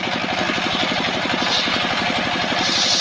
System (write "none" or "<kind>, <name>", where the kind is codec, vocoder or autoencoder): none